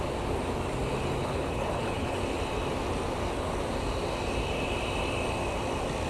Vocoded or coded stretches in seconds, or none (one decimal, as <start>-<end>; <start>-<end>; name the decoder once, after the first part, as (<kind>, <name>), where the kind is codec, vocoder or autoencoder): 1.2-2.2 (codec, HILCodec)